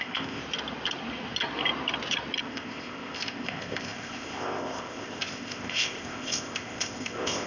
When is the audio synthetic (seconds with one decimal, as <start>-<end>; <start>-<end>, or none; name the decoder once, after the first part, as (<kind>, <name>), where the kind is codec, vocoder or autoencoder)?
0.0-0.4 (codec, ZipCodec); 2.4-7.5